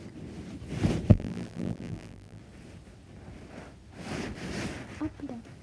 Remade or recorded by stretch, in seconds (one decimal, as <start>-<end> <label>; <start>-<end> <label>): 0.0-1.1 recorded; 1.1-2.4 remade; 2.4-5.6 recorded